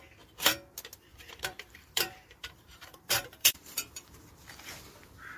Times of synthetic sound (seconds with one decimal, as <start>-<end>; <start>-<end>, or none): 1.1-4.3